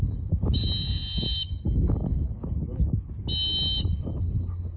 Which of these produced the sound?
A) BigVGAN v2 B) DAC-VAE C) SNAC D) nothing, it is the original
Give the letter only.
D